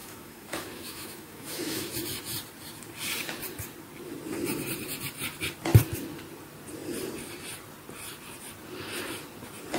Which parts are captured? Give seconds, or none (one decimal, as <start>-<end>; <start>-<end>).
1.9-9.8